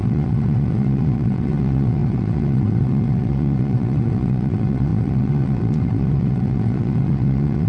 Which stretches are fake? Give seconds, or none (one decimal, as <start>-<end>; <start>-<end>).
0.0-7.7